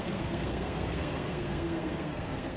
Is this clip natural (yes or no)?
no